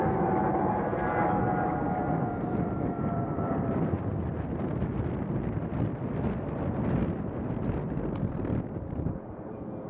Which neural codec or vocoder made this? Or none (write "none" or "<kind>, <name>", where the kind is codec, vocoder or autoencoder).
vocoder, BigVGAN v2